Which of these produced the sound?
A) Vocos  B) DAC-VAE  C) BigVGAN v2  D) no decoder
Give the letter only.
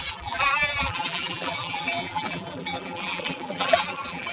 C